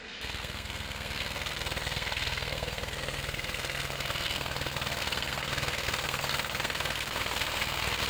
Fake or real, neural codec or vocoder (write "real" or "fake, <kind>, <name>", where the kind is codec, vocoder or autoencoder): fake, codec, SNAC